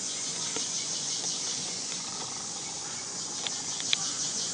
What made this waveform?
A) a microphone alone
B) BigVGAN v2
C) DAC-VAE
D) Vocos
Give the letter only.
D